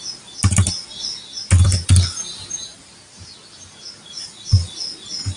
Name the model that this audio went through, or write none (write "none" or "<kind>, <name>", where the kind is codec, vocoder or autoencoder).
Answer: none